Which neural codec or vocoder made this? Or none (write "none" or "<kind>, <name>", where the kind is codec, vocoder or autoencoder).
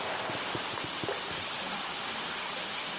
none